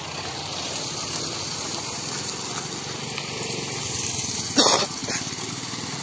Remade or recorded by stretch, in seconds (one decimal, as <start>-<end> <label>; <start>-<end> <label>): 0.0-6.0 recorded